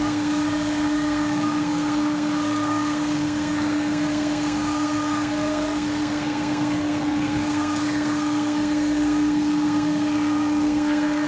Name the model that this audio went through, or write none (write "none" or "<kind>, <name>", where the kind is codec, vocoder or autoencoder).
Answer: codec, SNAC